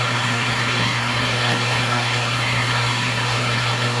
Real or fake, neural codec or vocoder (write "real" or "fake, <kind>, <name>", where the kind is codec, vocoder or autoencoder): fake, codec, SNAC